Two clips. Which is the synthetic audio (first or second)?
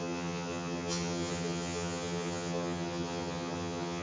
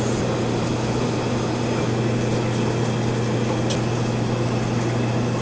first